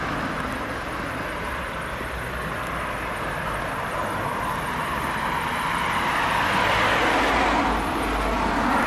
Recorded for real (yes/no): yes